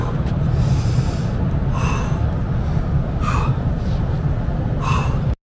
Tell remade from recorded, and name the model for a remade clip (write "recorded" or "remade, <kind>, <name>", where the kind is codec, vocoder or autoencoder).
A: recorded